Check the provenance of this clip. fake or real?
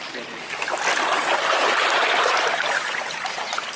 real